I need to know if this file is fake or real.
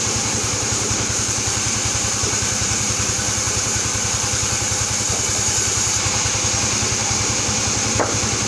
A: fake